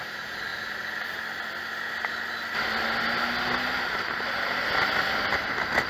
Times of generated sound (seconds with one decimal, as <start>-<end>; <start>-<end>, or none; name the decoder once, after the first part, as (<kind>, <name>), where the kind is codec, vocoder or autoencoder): none